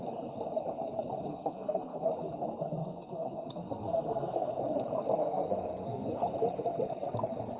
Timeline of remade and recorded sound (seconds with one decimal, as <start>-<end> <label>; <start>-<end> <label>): 0.0-1.3 recorded; 1.3-2.1 remade; 2.1-2.8 recorded; 2.8-4.5 remade; 4.5-5.2 recorded; 5.2-6.1 remade; 6.1-7.6 recorded